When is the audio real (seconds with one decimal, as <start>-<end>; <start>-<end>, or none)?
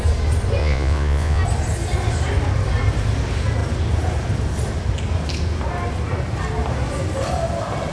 0.0-0.6; 1.4-7.9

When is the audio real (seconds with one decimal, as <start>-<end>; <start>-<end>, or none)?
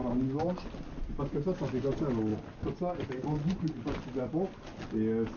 0.0-5.4